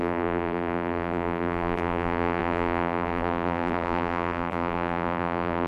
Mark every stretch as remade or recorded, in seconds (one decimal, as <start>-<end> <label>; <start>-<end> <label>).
0.0-5.7 remade